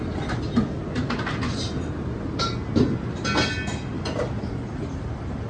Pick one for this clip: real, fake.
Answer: real